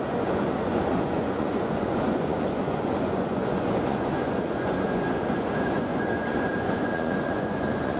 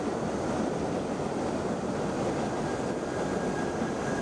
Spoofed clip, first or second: first